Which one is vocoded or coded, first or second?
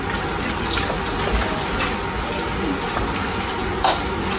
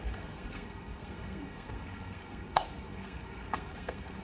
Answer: second